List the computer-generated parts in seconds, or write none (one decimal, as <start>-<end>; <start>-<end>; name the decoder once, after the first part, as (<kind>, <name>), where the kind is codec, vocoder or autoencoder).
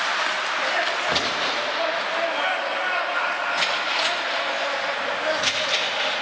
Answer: none